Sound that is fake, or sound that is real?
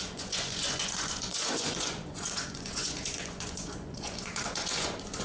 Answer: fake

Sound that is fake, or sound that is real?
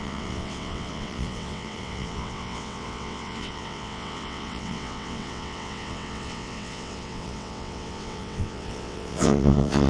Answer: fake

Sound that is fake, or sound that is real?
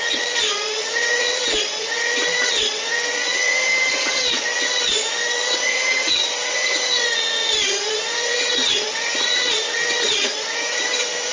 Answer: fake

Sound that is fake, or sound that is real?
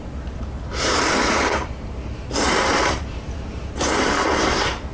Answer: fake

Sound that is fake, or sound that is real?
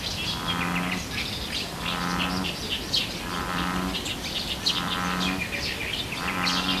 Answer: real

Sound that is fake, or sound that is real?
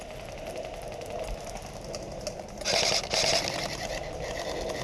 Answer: real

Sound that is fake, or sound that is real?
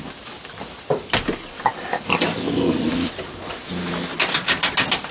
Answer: real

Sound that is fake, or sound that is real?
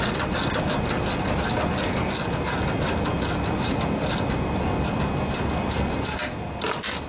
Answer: real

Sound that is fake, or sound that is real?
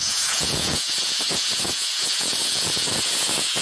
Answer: fake